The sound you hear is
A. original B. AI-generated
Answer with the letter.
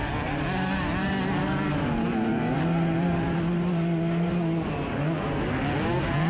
A